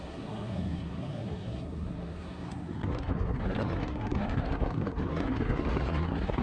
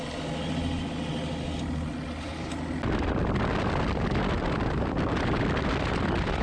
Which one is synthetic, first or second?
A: first